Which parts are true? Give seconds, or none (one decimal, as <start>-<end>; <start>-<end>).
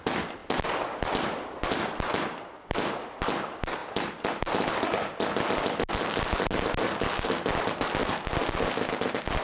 0.0-9.4